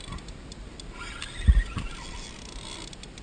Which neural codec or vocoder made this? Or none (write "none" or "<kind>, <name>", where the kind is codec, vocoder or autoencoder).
none